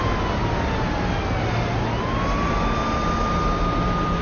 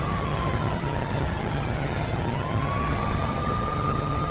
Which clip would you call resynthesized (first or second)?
second